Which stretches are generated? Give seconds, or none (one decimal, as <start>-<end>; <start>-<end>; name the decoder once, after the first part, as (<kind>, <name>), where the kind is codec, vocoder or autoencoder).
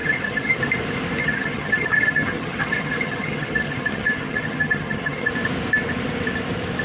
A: 0.0-0.6 (vocoder, HiFi-GAN); 1.2-5.3